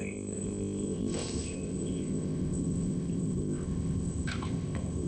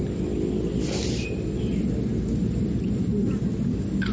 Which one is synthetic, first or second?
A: first